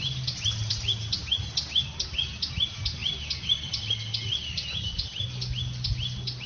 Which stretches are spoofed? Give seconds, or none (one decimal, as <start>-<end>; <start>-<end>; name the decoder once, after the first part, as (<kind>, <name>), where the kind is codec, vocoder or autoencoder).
none